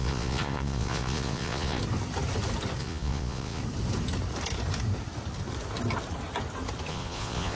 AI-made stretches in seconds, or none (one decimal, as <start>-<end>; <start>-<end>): 0.0-1.8; 2.8-3.6; 6.9-7.5